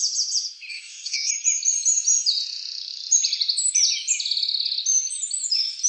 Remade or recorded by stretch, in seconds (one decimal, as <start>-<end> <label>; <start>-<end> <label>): 0.0-0.7 recorded; 0.7-1.3 remade; 1.3-5.9 recorded